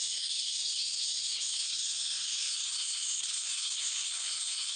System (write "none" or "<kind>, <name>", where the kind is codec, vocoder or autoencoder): codec, SNAC